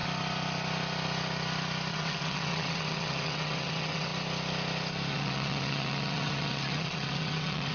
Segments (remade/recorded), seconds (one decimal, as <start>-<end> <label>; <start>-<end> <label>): 0.0-1.9 recorded; 1.9-4.1 remade; 4.1-5.1 recorded; 5.1-7.7 remade